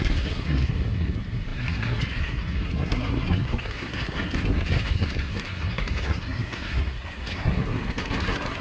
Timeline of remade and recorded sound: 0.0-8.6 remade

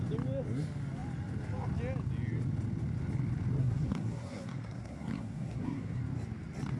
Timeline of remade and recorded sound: 0.0-3.6 recorded; 3.6-6.0 remade; 6.0-6.8 recorded

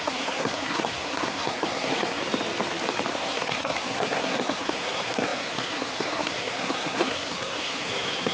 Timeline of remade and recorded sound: 0.0-2.2 remade; 2.2-3.1 recorded; 3.1-8.3 remade

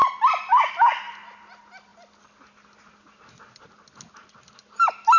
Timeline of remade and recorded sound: 0.0-5.2 recorded

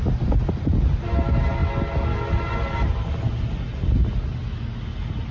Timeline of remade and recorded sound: 0.0-5.3 recorded

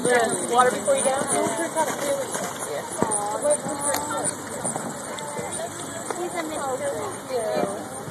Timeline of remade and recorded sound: 0.0-8.1 recorded